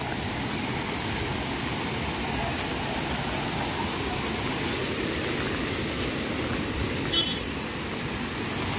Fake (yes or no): no